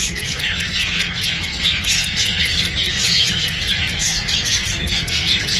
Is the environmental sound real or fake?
fake